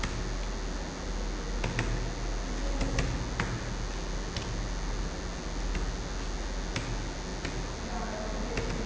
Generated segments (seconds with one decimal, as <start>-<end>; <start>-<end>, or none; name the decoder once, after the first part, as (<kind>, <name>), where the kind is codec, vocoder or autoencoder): none